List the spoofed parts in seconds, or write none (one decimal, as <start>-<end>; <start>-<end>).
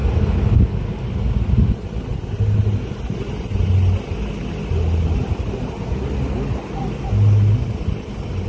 none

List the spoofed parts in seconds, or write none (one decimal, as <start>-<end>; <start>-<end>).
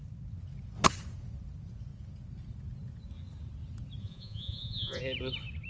4.0-5.0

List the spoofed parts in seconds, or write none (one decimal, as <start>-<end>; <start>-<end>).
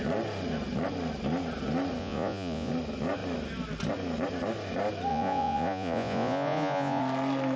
2.0-2.7; 5.1-7.0